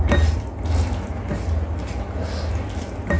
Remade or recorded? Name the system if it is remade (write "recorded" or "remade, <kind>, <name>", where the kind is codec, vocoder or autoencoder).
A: recorded